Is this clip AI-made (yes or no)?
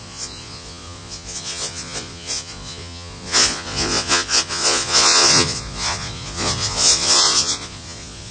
yes